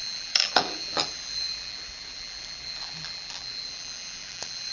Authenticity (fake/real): fake